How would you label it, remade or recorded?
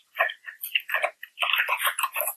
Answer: recorded